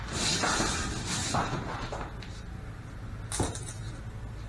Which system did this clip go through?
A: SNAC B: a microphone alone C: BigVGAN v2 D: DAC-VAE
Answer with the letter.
B